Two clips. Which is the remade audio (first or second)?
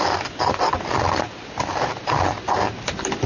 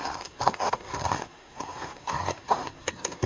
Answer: second